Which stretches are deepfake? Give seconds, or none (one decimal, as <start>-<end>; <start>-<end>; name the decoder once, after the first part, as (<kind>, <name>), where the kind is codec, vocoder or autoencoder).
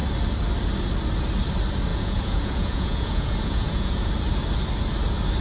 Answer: 1.9-4.1 (vocoder, Vocos)